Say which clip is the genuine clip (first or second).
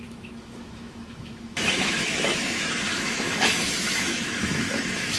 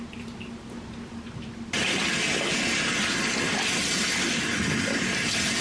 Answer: second